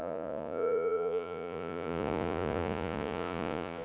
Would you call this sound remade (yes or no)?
yes